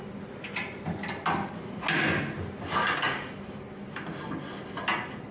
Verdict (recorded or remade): recorded